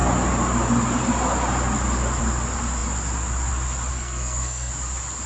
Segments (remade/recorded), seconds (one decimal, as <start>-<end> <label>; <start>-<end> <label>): 0.0-3.9 recorded; 3.9-4.7 remade; 4.7-5.3 recorded